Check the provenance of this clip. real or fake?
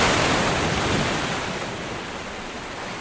real